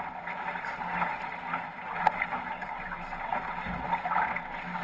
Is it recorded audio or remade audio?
recorded